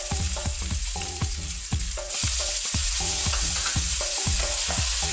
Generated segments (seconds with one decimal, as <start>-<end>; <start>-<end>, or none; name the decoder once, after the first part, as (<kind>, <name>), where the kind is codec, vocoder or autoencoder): 0.0-5.1 (vocoder, Vocos)